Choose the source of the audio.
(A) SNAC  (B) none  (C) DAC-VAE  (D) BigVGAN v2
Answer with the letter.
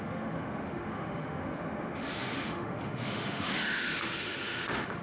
C